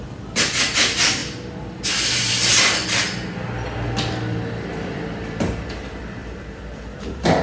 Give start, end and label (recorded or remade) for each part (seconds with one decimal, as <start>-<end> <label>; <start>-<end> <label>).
0.0-1.2 remade; 1.2-2.1 recorded; 2.1-2.5 remade; 2.5-4.7 recorded; 4.7-7.4 remade